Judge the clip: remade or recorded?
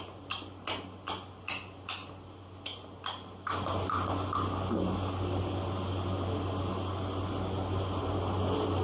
recorded